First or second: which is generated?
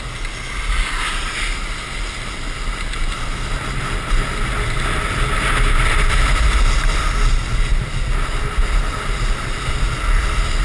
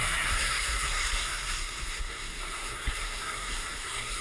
second